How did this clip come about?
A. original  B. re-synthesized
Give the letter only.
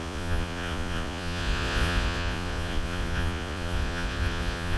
B